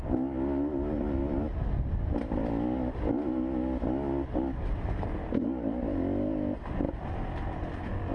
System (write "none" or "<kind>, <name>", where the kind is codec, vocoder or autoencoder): none